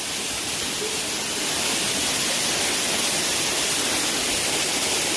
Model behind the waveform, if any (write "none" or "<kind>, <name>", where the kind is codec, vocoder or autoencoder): none